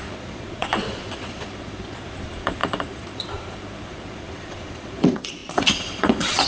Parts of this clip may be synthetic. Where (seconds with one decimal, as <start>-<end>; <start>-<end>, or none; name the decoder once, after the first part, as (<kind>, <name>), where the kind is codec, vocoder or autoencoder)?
0.0-6.5 (vocoder, Vocos)